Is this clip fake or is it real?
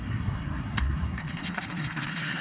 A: fake